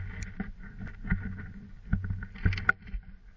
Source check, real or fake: real